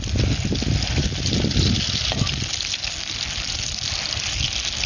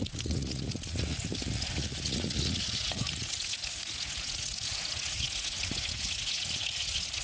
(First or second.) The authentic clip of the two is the first